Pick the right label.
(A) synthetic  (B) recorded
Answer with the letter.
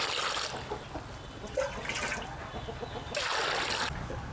B